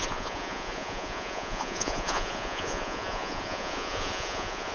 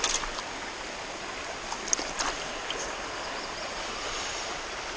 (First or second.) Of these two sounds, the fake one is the first